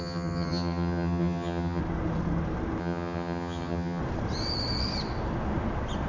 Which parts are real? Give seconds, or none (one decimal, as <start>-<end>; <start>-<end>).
1.8-2.8; 4.0-6.1

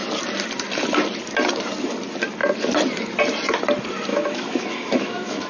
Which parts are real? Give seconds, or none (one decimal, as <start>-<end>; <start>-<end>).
0.0-4.1

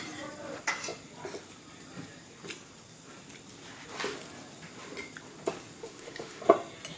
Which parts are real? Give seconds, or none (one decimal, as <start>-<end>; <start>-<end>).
0.0-5.8; 6.4-7.0

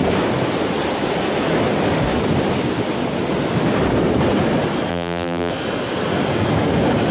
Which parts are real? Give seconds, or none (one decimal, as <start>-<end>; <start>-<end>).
0.0-4.9; 5.5-7.1

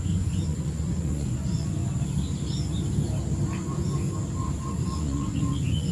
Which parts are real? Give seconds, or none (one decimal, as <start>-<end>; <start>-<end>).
1.8-4.7

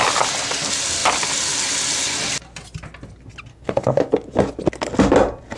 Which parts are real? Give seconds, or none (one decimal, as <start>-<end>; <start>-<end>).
0.0-3.5; 4.1-5.6